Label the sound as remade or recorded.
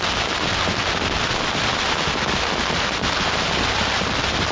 recorded